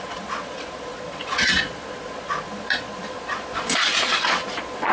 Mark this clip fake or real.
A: fake